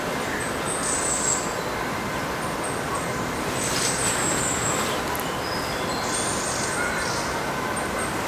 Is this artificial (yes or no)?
no